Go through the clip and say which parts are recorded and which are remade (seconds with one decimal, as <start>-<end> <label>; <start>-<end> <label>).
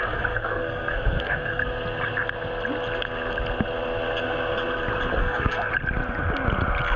0.0-1.6 remade; 1.6-5.2 recorded; 5.2-5.7 remade; 5.7-7.0 recorded